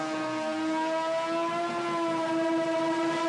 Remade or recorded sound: recorded